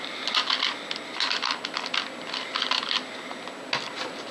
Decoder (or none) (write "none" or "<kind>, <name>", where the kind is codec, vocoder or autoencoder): none